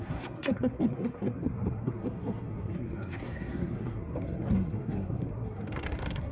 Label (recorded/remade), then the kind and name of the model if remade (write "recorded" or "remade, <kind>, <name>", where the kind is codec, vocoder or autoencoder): remade, codec, SNAC